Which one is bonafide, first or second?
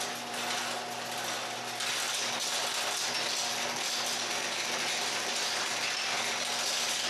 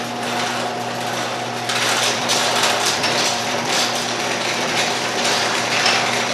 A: first